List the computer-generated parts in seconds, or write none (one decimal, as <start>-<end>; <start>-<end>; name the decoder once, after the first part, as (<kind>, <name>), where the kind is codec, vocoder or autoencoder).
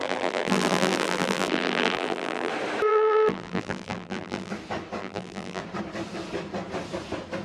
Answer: 0.0-2.5 (vocoder, BigVGAN v2); 2.9-4.5; 5.0-5.6